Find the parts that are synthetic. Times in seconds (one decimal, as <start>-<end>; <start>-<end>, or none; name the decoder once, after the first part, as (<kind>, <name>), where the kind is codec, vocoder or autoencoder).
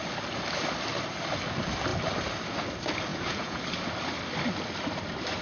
3.1-3.6 (vocoder, Vocos)